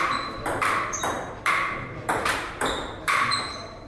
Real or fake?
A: fake